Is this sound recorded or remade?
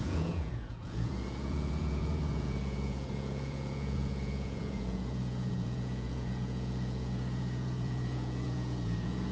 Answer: remade